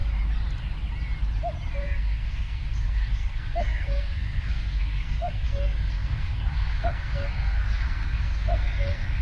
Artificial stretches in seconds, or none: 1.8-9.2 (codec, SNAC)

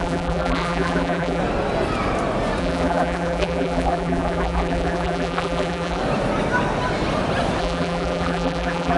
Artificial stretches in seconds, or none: 0.0-1.4 (vocoder, BigVGAN v2); 2.6-6.0; 7.6-9.0

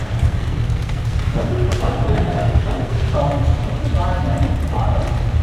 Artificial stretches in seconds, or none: 0.0-3.2 (codec, SNAC)